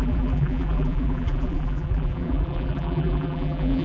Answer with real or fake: fake